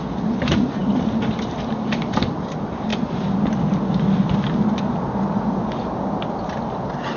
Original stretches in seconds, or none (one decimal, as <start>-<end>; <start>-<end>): 2.9-7.2